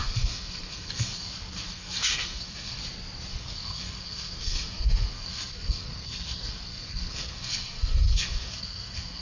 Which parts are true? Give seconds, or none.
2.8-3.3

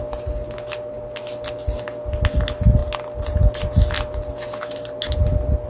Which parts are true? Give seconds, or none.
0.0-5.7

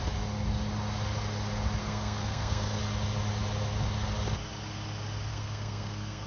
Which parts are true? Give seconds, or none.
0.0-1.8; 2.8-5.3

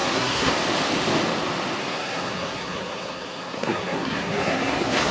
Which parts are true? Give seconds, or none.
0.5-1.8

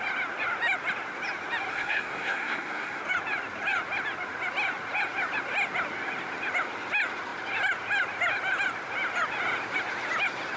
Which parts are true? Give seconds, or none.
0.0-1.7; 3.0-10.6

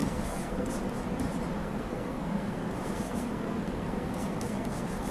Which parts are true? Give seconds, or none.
0.7-1.6

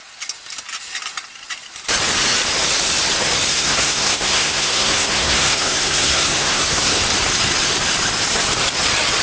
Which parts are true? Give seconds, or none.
0.0-3.5; 7.0-9.2